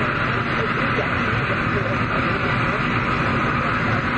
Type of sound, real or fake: real